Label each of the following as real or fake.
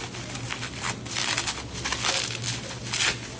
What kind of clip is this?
real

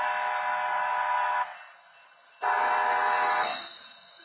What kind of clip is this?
real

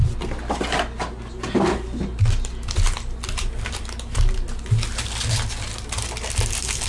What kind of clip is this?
real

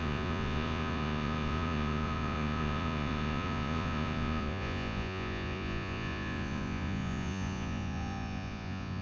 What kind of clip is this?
fake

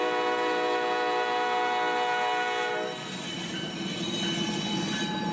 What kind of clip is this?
real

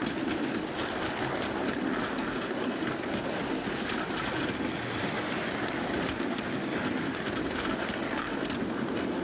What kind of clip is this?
real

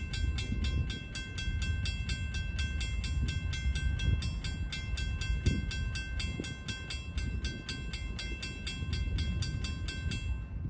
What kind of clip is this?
real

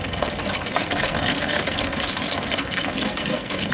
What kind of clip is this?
fake